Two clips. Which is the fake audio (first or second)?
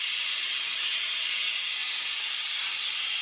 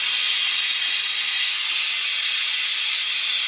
first